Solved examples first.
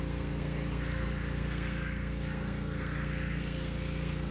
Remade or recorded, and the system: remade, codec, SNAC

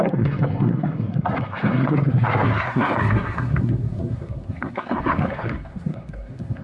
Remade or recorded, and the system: remade, codec, SNAC